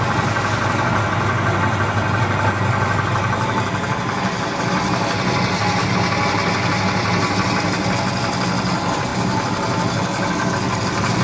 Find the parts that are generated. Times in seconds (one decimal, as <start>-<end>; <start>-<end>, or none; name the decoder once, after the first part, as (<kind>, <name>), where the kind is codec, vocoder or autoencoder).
none